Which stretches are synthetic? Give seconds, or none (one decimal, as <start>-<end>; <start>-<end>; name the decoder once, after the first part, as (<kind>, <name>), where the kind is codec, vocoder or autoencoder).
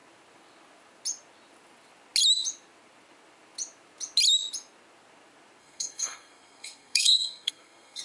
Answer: 5.6-8.0 (codec, SNAC)